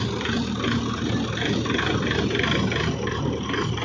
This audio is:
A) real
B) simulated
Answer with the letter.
A